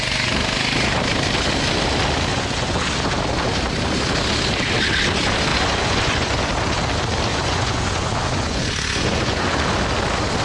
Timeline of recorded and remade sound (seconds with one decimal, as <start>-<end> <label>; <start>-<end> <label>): 0.0-2.3 recorded; 2.3-2.9 remade; 2.9-5.5 recorded; 5.5-6.5 remade; 6.5-7.3 recorded; 7.3-9.5 remade; 9.5-10.4 recorded

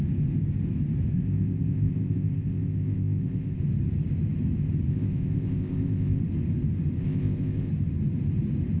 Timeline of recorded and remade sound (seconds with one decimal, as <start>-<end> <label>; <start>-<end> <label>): 0.0-1.1 recorded; 1.1-3.6 remade; 3.6-4.9 recorded; 4.9-6.2 remade; 6.2-7.0 recorded; 7.0-7.7 remade; 7.7-8.8 recorded